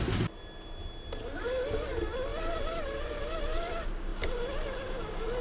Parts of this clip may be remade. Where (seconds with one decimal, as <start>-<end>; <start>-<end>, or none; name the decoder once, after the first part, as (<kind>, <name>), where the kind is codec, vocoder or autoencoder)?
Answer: none